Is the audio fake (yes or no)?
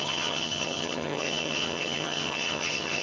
yes